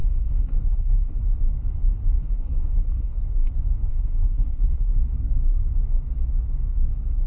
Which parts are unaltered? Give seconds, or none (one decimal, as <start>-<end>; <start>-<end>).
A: 1.2-2.2; 3.2-3.9; 4.9-7.3